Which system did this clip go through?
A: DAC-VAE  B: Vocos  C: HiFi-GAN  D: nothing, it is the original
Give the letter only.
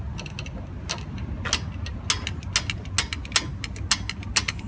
D